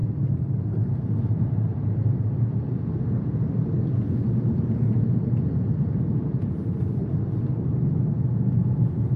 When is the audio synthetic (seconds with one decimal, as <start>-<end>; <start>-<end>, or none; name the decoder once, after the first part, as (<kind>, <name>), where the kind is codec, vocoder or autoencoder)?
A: 3.9-6.6 (vocoder, Vocos); 7.7-9.2